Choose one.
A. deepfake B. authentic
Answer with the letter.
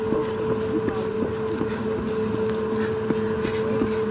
B